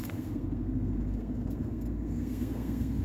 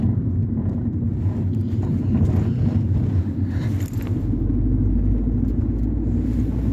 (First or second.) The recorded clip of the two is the second